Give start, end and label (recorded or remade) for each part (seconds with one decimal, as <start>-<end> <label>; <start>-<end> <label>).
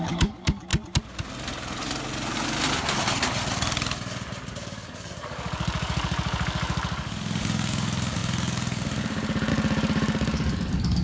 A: 0.0-0.7 remade; 0.7-4.5 recorded; 4.5-11.0 remade